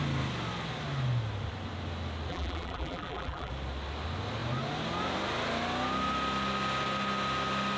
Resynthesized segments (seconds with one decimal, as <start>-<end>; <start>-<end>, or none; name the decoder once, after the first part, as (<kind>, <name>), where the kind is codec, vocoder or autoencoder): 2.3-3.5 (vocoder, BigVGAN v2)